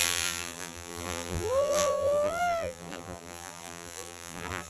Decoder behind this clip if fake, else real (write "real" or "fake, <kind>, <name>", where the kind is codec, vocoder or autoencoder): fake, vocoder, BigVGAN v2